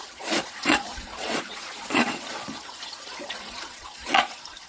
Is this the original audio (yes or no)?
no